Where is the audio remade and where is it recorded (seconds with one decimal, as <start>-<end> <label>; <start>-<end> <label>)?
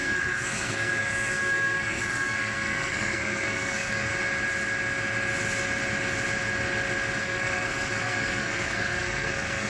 0.0-4.1 remade; 4.1-7.2 recorded; 7.2-9.7 remade